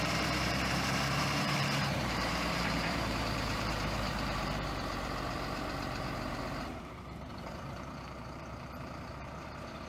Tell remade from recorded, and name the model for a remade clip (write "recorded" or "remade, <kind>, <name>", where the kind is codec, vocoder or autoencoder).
remade, vocoder, BigVGAN v2